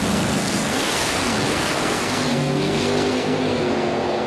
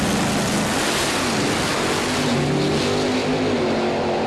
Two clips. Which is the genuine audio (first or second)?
second